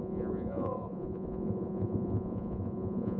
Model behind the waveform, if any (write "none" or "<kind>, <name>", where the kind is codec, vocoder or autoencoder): vocoder, Vocos